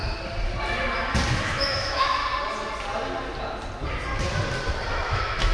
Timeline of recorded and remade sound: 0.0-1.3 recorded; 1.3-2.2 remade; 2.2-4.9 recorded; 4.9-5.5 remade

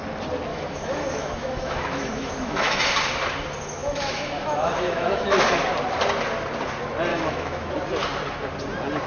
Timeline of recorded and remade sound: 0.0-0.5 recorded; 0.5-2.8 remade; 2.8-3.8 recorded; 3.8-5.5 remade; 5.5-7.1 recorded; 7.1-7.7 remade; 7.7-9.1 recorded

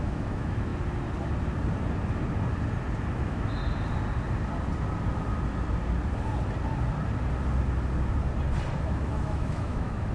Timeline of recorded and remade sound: 0.0-0.7 remade; 0.7-3.2 recorded; 3.2-3.6 remade; 3.6-8.8 recorded; 8.8-10.1 remade

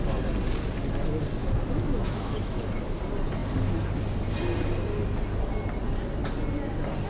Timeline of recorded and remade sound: 0.0-1.4 recorded; 1.4-2.8 remade; 2.8-7.1 recorded